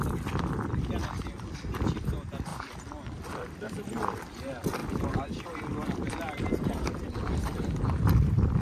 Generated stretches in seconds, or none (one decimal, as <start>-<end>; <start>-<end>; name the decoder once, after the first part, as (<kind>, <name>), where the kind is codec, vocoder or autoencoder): none